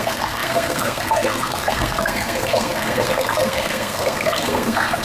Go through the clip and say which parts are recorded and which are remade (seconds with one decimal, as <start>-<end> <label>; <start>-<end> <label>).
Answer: 0.0-5.0 remade